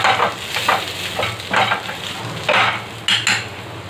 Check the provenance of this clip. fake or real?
real